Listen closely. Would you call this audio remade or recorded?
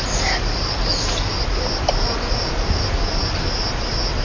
recorded